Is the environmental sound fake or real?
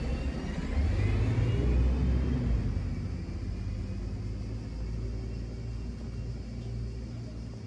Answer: real